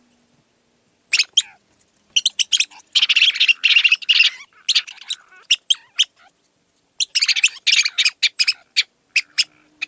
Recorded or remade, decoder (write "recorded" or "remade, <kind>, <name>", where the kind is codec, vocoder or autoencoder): recorded